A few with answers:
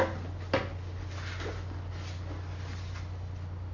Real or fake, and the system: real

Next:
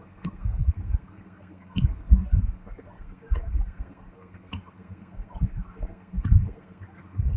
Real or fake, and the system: fake, codec, SNAC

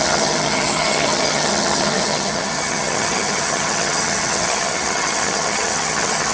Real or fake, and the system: fake, vocoder, HiFi-GAN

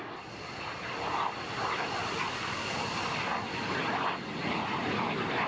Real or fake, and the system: real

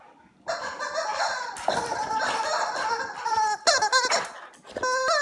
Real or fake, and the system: real